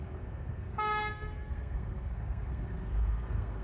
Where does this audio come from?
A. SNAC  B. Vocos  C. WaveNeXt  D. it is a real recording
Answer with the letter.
A